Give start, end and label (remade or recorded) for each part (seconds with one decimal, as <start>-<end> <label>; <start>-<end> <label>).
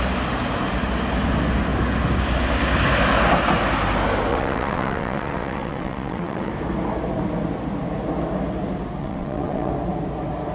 0.0-4.3 recorded; 4.3-6.5 remade; 6.5-9.0 recorded; 9.0-9.7 remade; 9.7-10.5 recorded